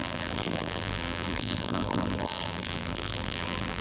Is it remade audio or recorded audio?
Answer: remade